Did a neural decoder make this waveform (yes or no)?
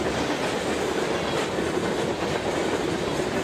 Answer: no